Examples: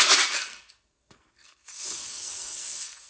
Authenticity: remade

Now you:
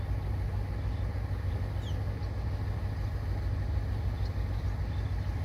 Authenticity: recorded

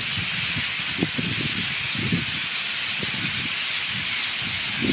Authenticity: recorded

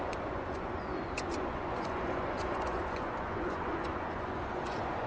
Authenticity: remade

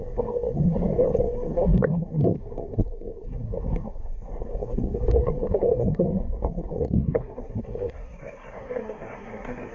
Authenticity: remade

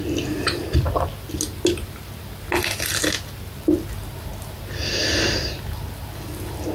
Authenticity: recorded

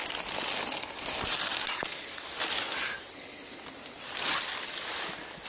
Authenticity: recorded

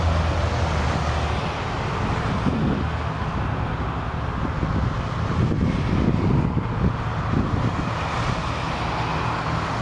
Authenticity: recorded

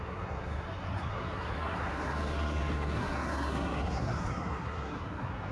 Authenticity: remade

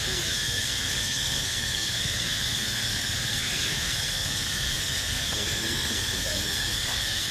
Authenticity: remade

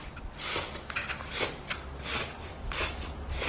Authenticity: remade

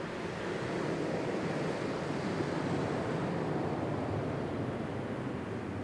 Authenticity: recorded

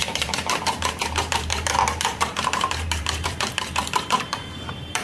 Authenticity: remade